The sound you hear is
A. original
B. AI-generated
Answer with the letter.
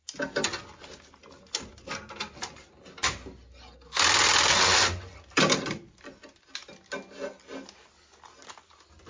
A